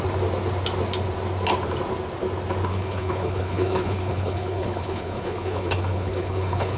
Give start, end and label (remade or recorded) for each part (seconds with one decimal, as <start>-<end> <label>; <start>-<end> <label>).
0.0-2.7 recorded; 2.7-6.8 remade